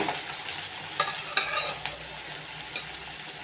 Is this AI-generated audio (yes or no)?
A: no